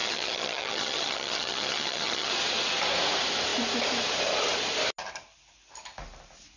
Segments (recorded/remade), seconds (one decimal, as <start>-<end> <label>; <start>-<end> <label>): 0.0-2.3 remade; 2.3-6.6 recorded

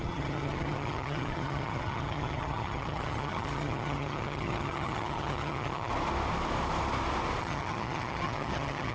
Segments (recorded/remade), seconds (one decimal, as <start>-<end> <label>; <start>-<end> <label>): 0.0-5.9 remade; 5.9-7.4 recorded; 7.4-8.9 remade

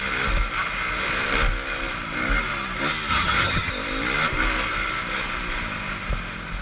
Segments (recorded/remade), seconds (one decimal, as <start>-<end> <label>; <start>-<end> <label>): 0.0-3.1 recorded; 3.1-3.7 remade; 3.7-6.6 recorded

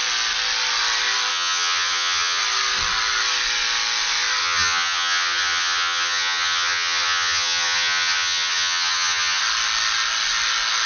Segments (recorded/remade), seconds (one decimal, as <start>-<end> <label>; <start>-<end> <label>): 0.0-1.3 recorded; 1.3-2.4 remade; 2.4-4.4 recorded; 4.4-9.4 remade; 9.4-10.9 recorded